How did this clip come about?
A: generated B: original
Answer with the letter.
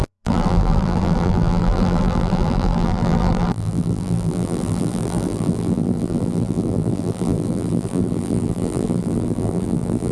A